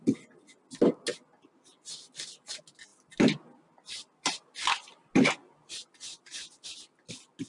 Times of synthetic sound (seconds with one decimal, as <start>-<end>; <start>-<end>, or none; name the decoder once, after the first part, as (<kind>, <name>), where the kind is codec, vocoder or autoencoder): none

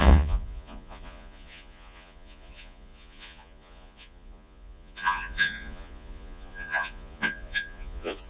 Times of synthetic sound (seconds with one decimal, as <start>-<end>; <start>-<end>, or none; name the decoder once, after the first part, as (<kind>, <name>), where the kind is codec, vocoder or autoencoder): 0.0-8.3 (vocoder, Vocos)

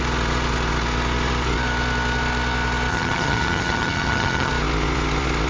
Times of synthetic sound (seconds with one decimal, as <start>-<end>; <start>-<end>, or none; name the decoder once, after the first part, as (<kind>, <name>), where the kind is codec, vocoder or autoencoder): 2.9-4.5 (vocoder, HiFi-GAN)

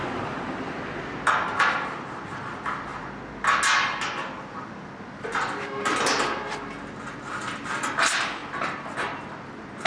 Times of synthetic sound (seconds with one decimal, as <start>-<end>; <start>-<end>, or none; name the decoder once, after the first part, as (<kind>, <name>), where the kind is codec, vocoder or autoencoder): 0.0-0.6 (vocoder, BigVGAN v2)

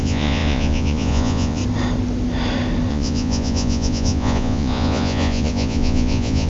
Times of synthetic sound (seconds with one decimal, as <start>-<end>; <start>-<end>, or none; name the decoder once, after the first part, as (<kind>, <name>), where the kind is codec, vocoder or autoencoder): 0.0-1.6 (vocoder, Vocos); 2.9-6.5

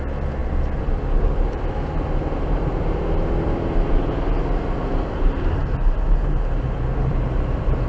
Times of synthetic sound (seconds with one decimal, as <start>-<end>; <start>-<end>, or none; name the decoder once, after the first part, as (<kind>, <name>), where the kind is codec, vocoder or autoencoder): 0.4-5.1 (vocoder, BigVGAN v2); 5.6-7.9

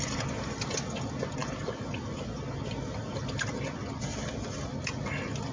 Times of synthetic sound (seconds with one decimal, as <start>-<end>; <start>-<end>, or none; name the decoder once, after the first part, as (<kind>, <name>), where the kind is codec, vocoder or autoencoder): none